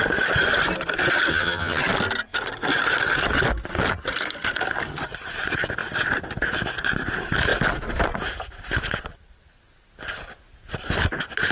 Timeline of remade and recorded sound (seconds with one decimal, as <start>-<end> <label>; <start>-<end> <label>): 0.0-1.3 recorded; 1.3-1.8 remade; 1.8-11.5 recorded